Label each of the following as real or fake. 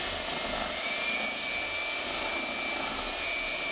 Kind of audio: real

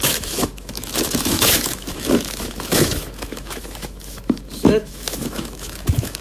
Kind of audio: fake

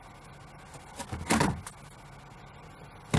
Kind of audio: real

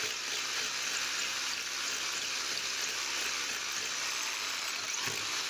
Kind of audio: real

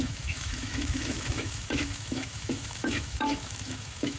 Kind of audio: fake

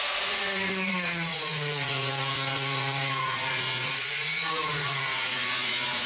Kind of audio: fake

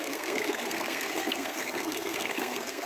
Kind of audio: fake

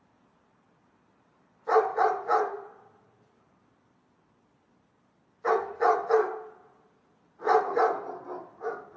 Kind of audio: real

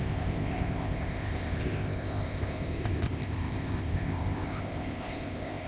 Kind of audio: fake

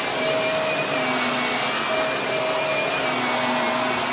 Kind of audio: real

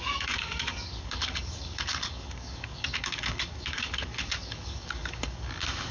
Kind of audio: fake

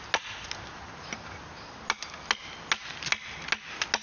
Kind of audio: real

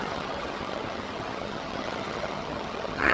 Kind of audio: fake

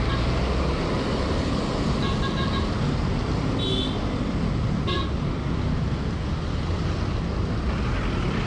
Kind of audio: real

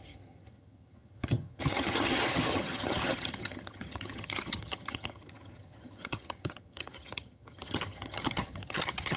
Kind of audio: fake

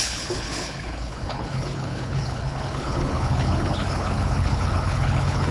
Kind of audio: fake